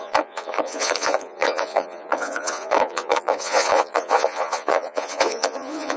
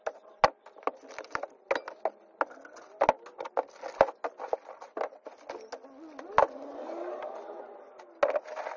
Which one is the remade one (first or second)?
first